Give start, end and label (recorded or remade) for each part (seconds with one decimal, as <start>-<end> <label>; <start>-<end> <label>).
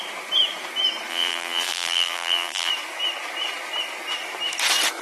0.0-1.1 recorded; 1.1-2.7 remade; 2.7-5.0 recorded